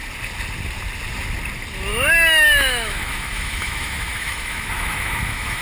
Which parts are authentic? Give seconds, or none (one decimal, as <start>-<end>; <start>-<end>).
0.0-1.9